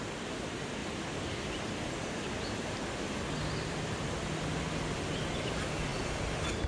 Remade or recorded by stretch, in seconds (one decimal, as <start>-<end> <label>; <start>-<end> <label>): 0.0-6.7 recorded